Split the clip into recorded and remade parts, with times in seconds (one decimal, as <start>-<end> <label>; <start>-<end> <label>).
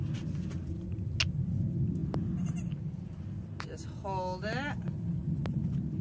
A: 0.0-6.0 recorded